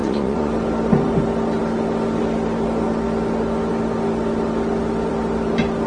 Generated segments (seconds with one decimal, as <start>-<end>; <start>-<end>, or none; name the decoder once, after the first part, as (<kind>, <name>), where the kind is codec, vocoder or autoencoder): 0.0-0.5 (vocoder, Vocos)